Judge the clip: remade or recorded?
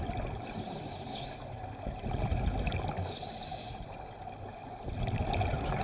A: recorded